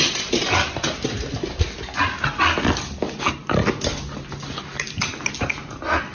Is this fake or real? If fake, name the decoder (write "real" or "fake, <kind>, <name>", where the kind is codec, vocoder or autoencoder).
real